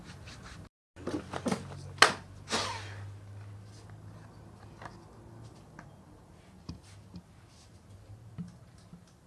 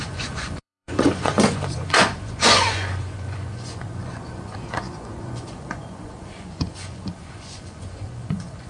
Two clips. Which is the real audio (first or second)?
first